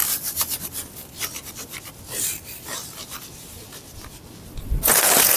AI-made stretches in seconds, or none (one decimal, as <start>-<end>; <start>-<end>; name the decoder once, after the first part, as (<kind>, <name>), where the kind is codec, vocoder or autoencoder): none